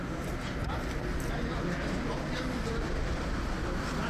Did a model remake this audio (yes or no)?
no